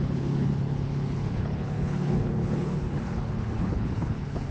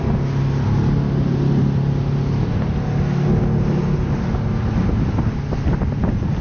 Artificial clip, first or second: first